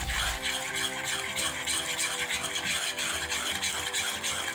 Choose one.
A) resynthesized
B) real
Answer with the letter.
B